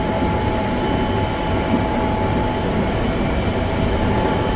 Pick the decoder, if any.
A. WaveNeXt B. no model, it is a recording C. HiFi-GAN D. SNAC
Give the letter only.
B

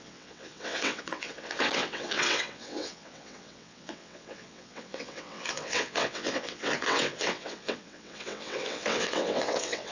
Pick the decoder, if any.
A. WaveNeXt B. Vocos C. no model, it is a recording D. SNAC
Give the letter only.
A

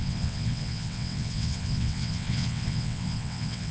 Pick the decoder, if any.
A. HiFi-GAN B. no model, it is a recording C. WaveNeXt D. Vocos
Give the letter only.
C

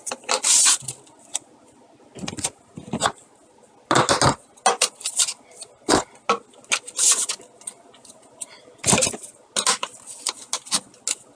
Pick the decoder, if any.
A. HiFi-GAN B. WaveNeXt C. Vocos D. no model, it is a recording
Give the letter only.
D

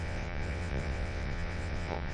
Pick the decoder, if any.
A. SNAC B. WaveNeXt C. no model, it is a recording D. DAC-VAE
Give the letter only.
B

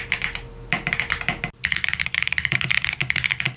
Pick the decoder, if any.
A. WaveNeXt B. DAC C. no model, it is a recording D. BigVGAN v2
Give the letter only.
C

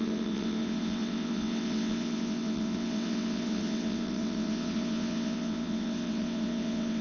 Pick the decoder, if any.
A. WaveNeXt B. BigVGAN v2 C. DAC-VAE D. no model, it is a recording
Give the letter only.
A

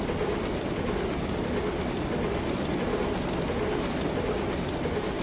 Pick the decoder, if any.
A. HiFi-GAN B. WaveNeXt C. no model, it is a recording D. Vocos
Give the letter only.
C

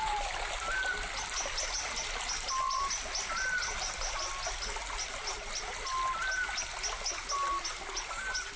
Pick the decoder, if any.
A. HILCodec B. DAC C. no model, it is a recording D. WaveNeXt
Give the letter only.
C